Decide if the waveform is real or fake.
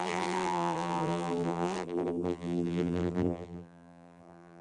fake